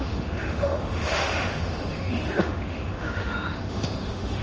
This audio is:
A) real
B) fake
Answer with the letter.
B